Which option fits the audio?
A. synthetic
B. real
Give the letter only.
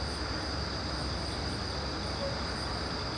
B